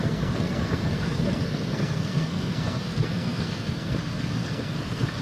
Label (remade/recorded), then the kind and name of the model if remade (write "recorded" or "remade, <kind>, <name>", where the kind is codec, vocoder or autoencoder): remade, codec, SNAC